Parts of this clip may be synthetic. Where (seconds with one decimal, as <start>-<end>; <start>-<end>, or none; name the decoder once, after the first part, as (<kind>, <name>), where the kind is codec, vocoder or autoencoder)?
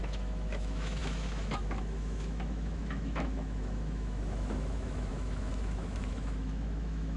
0.0-7.2 (autoencoder, DAC-VAE)